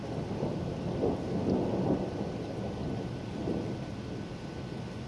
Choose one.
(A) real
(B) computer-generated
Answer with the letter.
A